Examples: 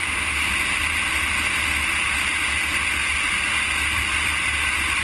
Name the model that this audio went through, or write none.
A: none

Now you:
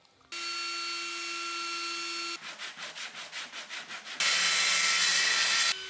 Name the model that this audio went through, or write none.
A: none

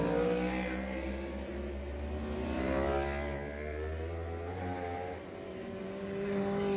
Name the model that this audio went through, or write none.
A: none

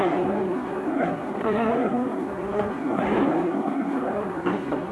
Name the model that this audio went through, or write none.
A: codec, SNAC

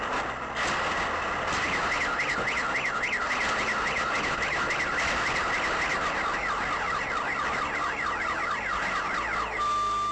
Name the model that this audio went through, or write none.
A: none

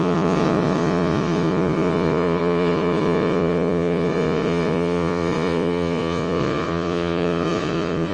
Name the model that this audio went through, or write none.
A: vocoder, Vocos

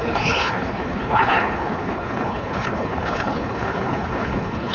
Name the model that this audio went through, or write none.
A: codec, HILCodec